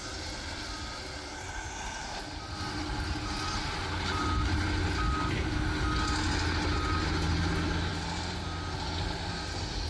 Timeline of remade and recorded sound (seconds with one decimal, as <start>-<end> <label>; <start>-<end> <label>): 0.0-9.9 recorded